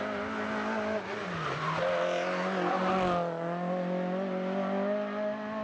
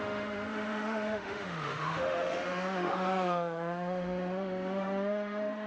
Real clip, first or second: first